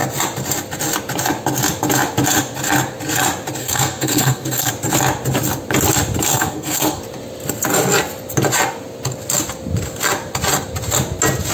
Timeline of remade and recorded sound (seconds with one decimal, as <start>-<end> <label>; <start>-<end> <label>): 0.0-3.6 recorded; 3.6-4.7 remade; 4.7-6.3 recorded; 6.3-7.0 remade; 7.0-11.5 recorded